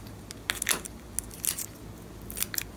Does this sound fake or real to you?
real